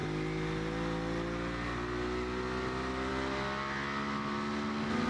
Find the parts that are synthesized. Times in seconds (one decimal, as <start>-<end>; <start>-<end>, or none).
none